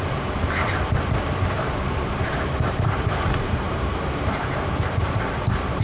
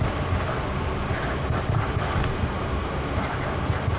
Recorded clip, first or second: second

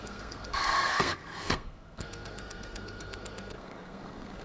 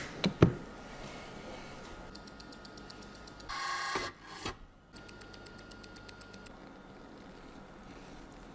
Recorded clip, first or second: second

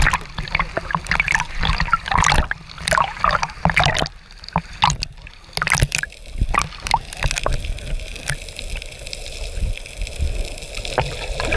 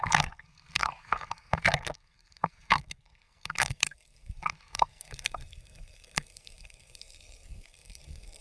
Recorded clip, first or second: first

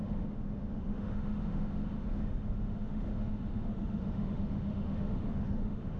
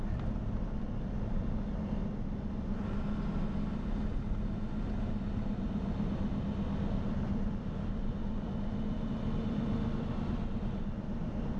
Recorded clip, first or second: second